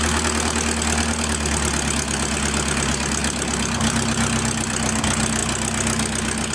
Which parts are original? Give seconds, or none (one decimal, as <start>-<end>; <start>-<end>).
0.0-3.2; 5.0-6.5